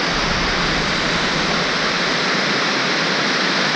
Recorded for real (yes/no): yes